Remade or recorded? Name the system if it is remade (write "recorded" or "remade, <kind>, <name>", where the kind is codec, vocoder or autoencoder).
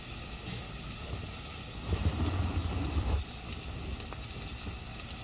recorded